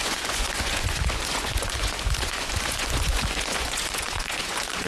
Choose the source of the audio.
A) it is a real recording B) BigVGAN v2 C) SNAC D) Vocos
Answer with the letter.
D